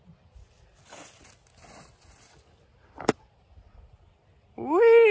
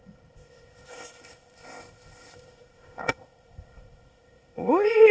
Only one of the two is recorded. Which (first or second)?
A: first